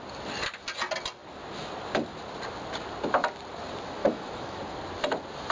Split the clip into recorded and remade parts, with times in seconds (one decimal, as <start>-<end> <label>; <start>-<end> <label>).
0.0-4.0 recorded; 4.0-4.6 remade; 4.6-5.5 recorded